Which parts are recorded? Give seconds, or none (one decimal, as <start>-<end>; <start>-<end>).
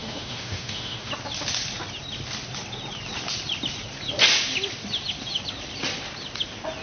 1.1-6.8